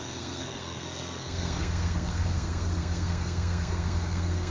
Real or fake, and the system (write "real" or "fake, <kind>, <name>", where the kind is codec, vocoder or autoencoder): fake, codec, SNAC